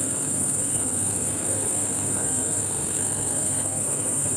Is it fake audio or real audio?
fake